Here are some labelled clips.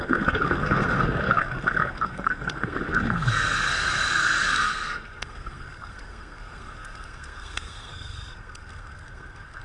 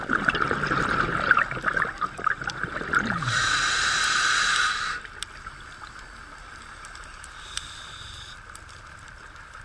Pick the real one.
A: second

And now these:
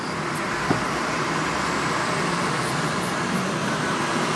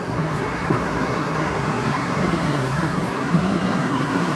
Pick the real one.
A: first